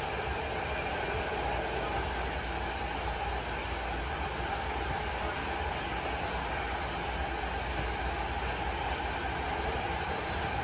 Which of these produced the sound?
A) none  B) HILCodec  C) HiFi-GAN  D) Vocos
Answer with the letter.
A